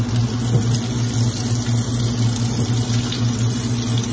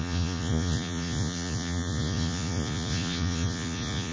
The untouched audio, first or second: first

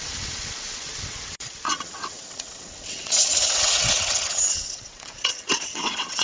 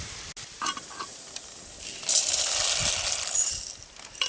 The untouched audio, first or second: second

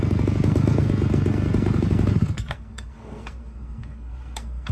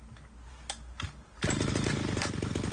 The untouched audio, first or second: second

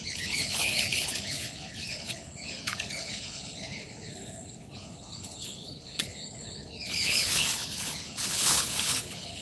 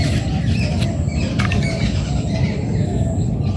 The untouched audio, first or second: second